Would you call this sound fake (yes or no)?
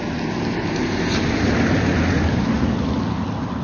no